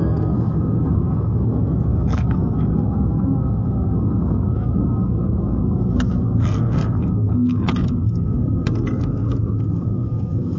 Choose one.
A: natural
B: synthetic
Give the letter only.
B